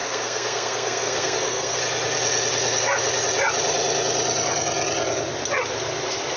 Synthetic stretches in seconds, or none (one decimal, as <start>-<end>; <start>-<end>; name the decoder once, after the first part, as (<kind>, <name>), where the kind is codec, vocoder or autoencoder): 0.0-1.8 (codec, SNAC)